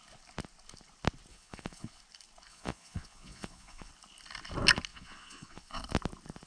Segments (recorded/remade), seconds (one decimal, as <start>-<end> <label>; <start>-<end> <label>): 0.0-1.3 recorded; 1.3-2.0 remade; 2.0-2.5 recorded; 2.5-3.9 remade; 3.9-4.9 recorded; 4.9-5.8 remade; 5.8-6.5 recorded